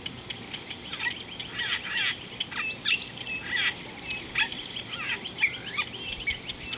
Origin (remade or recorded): recorded